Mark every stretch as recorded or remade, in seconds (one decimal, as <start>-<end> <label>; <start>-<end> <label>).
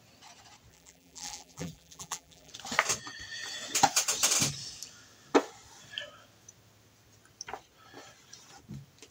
0.0-0.7 recorded; 0.7-2.5 remade; 2.5-9.1 recorded